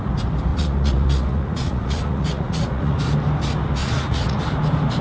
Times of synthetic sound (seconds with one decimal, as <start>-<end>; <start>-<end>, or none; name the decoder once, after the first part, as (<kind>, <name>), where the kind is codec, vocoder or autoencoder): 0.5-3.0 (vocoder, Vocos); 3.8-4.4